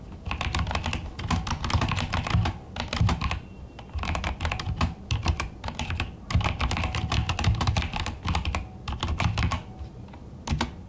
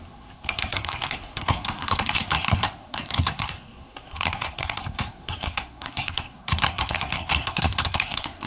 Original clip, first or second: first